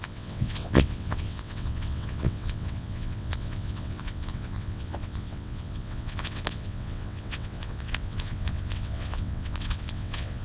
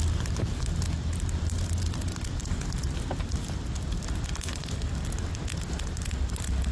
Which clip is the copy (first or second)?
first